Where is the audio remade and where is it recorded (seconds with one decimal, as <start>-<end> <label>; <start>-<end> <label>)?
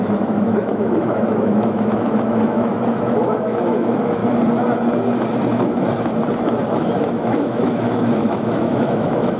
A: 0.0-4.2 remade; 4.2-6.7 recorded; 6.7-9.4 remade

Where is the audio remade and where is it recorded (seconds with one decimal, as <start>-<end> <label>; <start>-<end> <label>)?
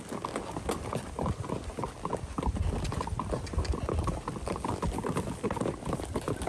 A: 0.0-6.5 recorded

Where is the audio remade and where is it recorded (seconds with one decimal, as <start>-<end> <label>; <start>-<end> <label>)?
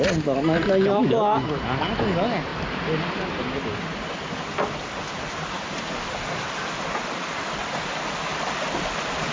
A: 0.0-9.3 recorded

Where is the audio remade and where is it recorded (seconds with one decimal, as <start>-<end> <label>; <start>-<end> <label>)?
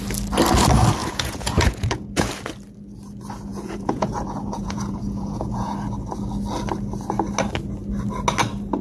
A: 0.0-1.0 recorded; 1.0-2.3 remade; 2.3-3.5 recorded; 3.5-5.7 remade; 5.7-8.8 recorded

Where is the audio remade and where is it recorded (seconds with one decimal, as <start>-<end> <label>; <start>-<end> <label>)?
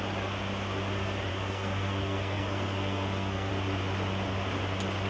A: 0.0-1.3 recorded; 1.3-3.5 remade; 3.5-5.1 recorded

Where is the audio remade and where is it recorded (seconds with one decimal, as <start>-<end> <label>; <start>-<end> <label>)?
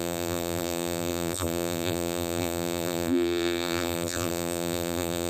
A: 0.0-5.3 remade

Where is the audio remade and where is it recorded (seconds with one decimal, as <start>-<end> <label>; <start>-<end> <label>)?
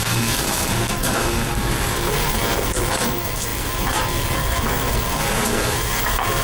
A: 0.0-6.4 remade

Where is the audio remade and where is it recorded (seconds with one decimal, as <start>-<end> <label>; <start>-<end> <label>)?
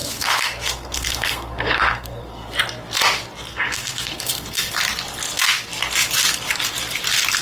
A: 0.0-2.5 remade; 2.5-3.5 recorded; 3.5-4.7 remade; 4.7-7.4 recorded